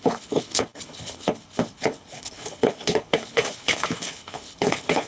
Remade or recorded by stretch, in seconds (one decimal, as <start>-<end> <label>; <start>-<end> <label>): 0.0-5.1 remade